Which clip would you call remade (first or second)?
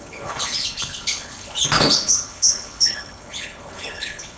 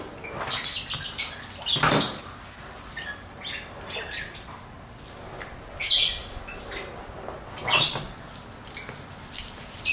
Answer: first